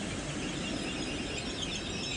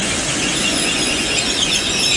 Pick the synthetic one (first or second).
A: second